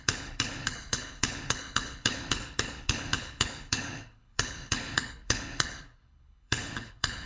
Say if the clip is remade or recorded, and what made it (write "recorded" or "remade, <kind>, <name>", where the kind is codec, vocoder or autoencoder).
remade, codec, HILCodec